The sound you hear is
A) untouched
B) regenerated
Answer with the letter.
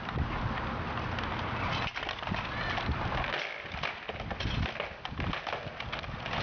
A